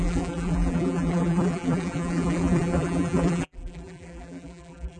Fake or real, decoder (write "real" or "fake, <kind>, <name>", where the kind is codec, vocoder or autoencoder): fake, vocoder, BigVGAN v2